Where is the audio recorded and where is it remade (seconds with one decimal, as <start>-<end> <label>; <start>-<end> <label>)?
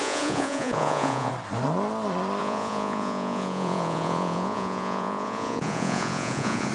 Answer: 0.0-1.3 remade; 1.3-2.4 recorded; 2.4-6.7 remade